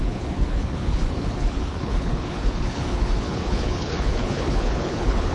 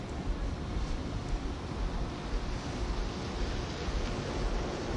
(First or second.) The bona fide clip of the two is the second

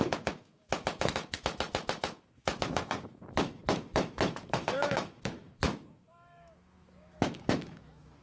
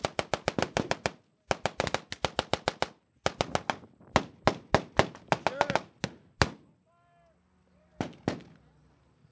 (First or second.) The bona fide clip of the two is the second